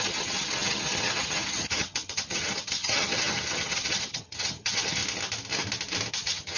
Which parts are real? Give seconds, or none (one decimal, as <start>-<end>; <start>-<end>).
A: 5.0-6.1